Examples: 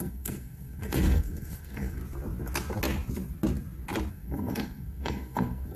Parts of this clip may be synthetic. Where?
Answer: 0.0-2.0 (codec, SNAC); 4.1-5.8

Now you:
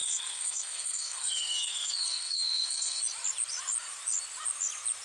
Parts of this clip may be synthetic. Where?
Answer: 0.0-3.0 (codec, SNAC)

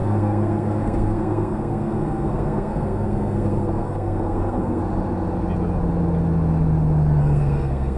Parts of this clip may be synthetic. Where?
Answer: 0.0-4.8 (codec, SNAC); 7.2-8.0